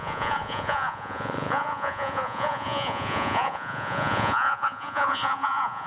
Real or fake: fake